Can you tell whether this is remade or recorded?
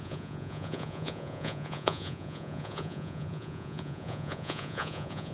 remade